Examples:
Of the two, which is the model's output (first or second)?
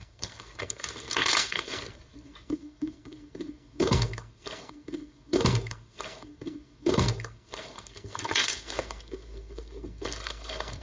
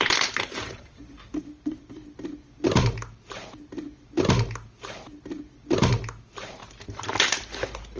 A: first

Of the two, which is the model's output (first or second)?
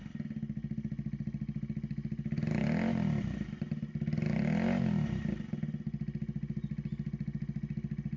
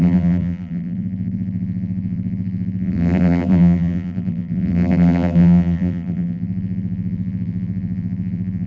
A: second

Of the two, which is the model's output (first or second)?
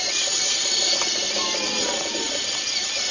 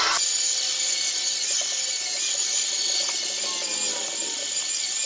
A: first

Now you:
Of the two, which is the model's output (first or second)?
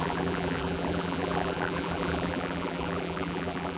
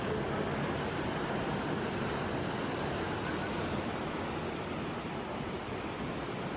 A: first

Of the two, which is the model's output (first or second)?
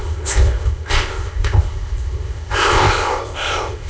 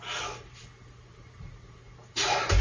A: first